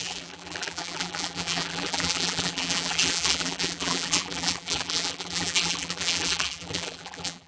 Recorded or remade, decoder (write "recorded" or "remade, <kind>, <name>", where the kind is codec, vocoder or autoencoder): remade, vocoder, BigVGAN v2